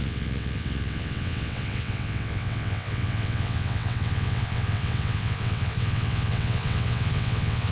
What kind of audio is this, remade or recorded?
remade